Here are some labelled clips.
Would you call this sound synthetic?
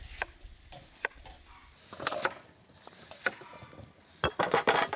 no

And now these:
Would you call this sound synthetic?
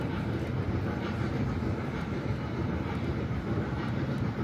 yes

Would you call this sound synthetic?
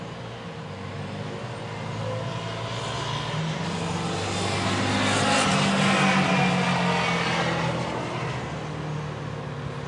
no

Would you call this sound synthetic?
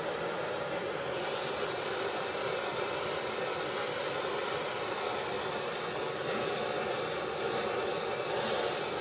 yes